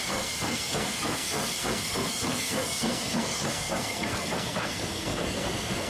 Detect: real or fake fake